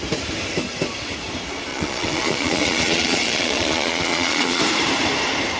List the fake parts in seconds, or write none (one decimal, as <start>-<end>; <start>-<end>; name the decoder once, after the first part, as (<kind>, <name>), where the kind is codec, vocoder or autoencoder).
1.7-4.6 (vocoder, Vocos)